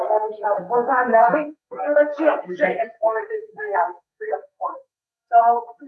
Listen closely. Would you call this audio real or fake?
fake